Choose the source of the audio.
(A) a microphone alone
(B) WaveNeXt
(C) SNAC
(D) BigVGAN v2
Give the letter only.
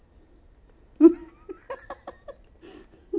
A